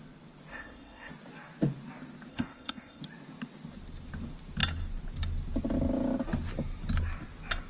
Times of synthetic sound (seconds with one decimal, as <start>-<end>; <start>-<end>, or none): 0.5-1.1; 2.3-3.0